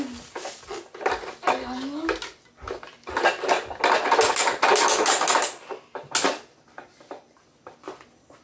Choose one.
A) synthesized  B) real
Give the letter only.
B